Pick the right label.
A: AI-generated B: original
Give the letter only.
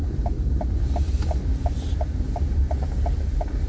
B